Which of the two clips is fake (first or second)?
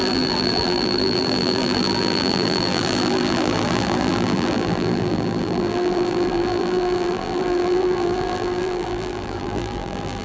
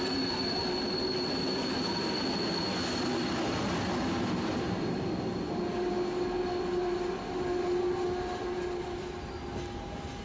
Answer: first